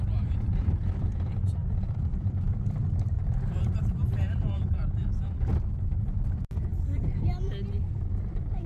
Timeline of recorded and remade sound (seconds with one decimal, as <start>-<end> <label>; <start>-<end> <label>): 0.0-5.5 remade; 5.5-8.1 recorded; 8.1-8.7 remade

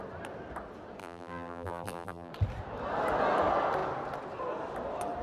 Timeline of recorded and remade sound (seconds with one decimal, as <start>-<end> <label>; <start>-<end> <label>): 0.0-1.0 recorded; 1.0-2.3 remade; 2.3-5.2 recorded